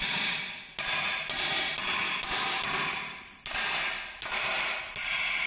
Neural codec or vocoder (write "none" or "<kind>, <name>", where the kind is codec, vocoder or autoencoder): none